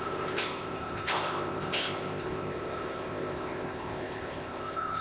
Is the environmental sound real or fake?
fake